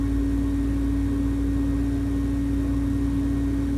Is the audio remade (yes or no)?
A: no